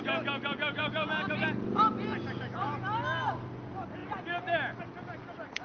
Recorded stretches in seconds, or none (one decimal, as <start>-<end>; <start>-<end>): 0.0-5.6